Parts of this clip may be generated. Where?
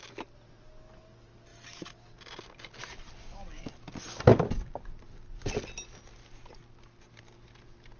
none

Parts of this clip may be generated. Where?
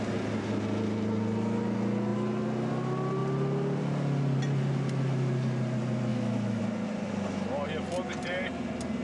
6.1-6.6